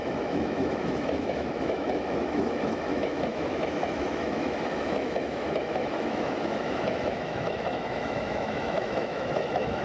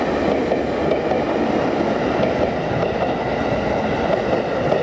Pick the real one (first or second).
second